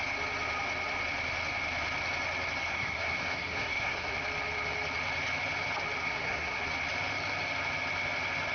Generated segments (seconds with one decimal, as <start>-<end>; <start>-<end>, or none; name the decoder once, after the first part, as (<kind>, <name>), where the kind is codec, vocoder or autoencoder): 2.6-4.1 (codec, SNAC); 6.0-6.6